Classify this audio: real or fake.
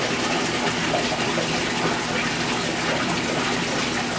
real